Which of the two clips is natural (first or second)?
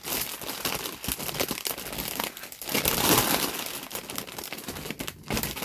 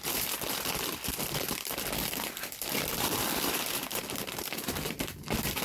first